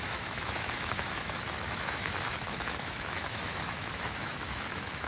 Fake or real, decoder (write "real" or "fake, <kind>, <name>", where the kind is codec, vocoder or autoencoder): fake, autoencoder, DAC-VAE